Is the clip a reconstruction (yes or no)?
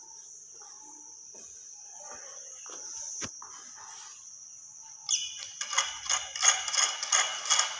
no